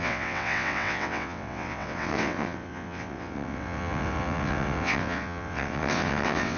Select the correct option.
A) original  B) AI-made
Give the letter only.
B